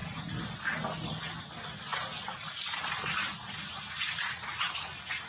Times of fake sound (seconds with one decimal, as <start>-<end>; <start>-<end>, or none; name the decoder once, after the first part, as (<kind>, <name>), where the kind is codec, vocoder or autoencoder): none